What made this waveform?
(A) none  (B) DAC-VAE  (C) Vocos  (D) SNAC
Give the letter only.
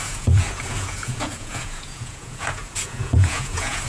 C